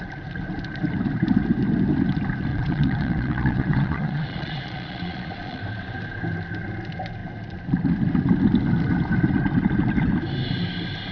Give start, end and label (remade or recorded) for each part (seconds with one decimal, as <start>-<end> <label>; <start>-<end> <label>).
0.0-2.5 recorded; 2.5-5.6 remade; 5.6-11.1 recorded